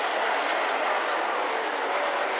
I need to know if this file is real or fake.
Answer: real